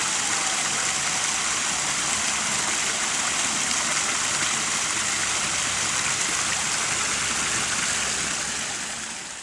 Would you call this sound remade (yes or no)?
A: no